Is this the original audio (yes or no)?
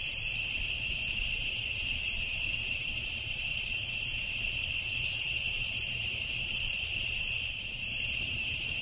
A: no